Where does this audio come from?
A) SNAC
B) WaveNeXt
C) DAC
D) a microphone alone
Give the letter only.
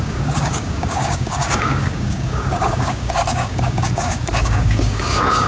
C